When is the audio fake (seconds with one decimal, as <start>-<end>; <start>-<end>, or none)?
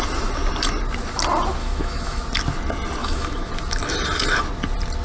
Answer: 1.6-2.2; 3.0-3.5